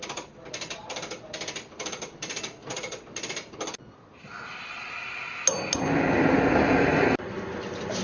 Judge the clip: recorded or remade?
recorded